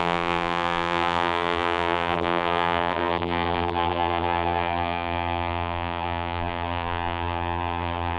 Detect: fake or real fake